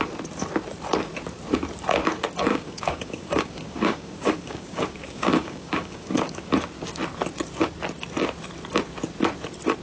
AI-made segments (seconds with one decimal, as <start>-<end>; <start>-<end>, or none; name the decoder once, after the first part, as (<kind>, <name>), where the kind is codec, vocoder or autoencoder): 2.5-6.5 (codec, DAC)

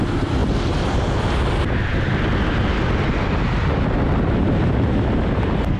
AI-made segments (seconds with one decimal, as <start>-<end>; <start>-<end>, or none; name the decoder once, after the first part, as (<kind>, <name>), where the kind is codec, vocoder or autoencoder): none

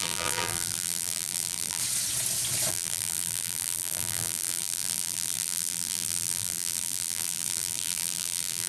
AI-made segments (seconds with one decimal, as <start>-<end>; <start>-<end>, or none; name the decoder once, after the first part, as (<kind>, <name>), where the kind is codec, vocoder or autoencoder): 0.0-1.8 (vocoder, BigVGAN v2); 2.7-8.7

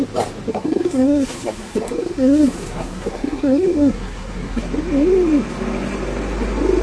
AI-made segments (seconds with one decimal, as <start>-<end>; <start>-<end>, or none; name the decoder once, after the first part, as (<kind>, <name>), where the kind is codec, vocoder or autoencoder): 0.5-4.6 (codec, SNAC)